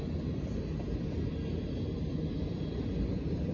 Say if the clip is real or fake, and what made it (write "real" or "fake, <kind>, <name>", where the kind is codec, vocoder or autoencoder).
real